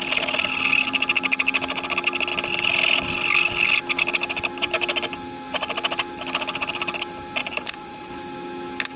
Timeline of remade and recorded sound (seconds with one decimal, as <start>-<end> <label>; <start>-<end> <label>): 0.0-7.4 recorded; 7.4-8.1 remade; 8.1-9.0 recorded